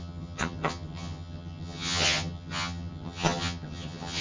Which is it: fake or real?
fake